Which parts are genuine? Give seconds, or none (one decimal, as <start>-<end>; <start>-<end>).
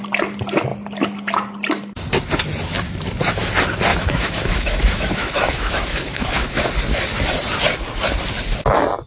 0.0-3.9; 6.7-9.1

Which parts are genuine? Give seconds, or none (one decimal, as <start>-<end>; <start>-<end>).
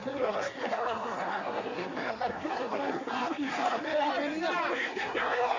4.1-4.7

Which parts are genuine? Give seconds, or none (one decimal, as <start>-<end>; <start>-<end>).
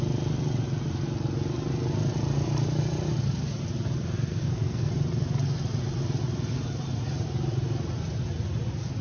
0.0-4.3; 4.9-9.0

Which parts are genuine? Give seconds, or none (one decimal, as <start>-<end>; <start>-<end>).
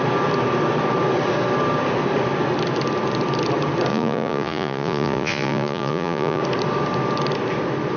0.0-3.9; 6.4-8.0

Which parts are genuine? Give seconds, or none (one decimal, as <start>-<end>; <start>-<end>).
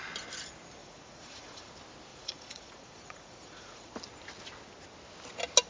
0.0-0.8; 1.7-2.1; 3.9-5.7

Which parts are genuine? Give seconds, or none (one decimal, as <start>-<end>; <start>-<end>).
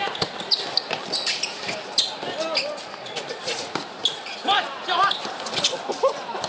0.0-6.5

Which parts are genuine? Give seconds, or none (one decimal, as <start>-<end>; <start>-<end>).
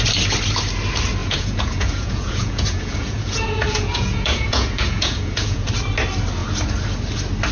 0.0-1.2; 5.7-7.5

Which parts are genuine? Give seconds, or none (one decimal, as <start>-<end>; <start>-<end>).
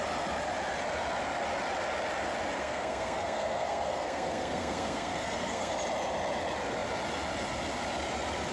0.0-2.6; 5.7-8.5